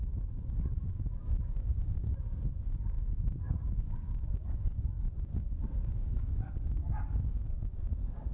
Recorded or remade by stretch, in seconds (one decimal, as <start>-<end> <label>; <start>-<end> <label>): 0.0-2.1 remade; 2.1-2.8 recorded; 2.8-8.3 remade